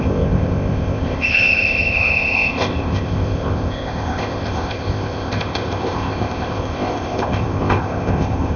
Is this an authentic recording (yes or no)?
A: no